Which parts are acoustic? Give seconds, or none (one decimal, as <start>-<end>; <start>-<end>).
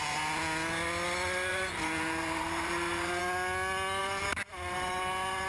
0.0-1.5; 3.2-4.0